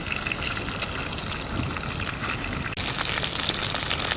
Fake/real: real